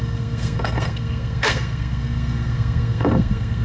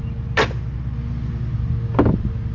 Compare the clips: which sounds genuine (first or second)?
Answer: second